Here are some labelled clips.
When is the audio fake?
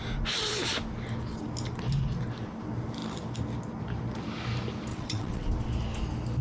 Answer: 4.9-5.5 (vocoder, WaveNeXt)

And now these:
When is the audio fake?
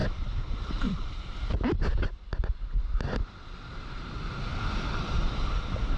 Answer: 0.0-2.8 (vocoder, BigVGAN v2)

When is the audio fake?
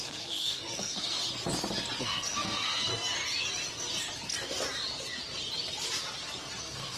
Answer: 0.0-1.2 (codec, SNAC); 2.0-2.9; 6.6-7.0